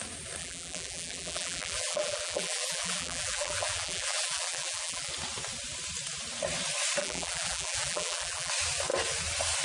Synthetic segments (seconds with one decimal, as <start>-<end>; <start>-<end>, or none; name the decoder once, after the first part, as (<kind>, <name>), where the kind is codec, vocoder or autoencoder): 0.4-5.1 (vocoder, BigVGAN v2); 7.0-8.5